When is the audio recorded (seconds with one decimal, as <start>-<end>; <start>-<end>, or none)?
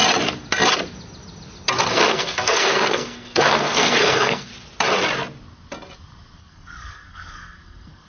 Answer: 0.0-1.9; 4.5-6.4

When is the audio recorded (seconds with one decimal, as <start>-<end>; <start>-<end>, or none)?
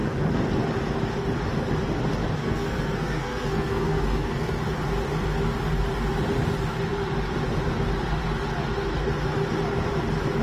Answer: 0.0-2.4; 4.6-10.4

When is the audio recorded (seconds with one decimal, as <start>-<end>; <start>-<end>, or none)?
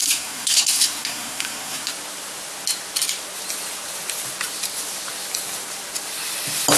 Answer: 1.9-6.8